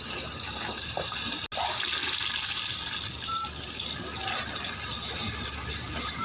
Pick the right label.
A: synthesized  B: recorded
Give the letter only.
B